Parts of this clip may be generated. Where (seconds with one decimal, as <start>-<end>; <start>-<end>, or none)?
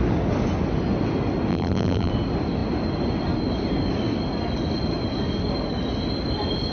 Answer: 1.5-2.1